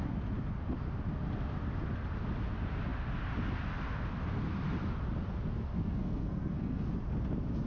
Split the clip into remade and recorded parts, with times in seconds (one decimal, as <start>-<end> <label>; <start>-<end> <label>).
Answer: 0.0-5.7 recorded; 5.7-6.9 remade; 6.9-7.7 recorded